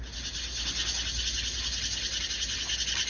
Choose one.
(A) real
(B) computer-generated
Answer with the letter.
A